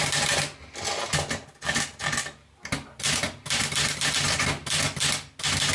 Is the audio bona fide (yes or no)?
yes